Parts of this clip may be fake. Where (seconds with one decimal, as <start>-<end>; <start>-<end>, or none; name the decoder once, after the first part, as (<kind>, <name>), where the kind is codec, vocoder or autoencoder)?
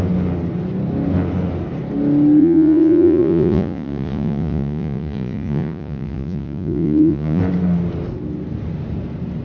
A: 2.4-7.4 (vocoder, Vocos)